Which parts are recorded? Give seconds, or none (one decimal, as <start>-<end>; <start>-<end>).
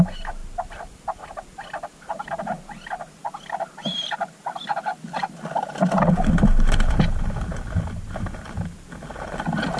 0.0-9.8